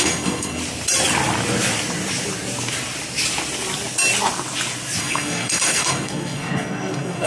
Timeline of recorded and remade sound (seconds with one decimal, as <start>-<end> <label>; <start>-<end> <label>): 0.0-0.6 remade; 0.6-5.0 recorded; 5.0-7.3 remade